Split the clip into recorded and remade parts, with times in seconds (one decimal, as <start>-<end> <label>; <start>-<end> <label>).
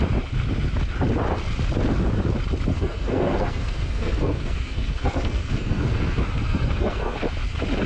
0.0-2.7 recorded; 2.7-7.2 remade; 7.2-7.9 recorded